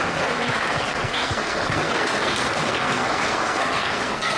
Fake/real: fake